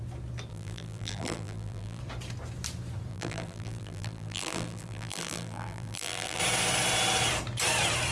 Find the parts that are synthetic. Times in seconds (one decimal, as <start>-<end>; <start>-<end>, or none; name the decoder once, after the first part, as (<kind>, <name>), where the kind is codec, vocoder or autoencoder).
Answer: 0.5-2.0 (vocoder, BigVGAN v2); 3.1-6.4